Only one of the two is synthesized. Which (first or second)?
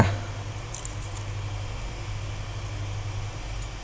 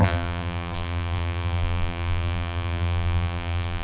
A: second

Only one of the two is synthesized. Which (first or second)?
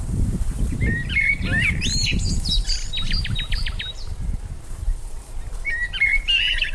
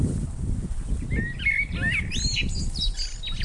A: first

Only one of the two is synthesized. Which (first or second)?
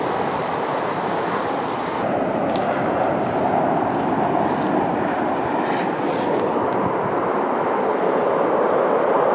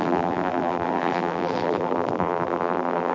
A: second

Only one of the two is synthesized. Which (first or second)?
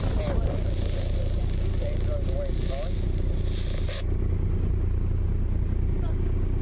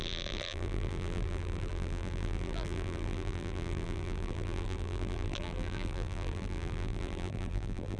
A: second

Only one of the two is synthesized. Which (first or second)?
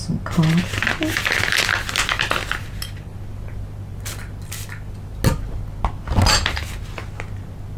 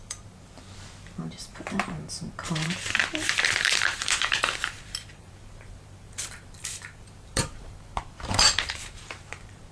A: second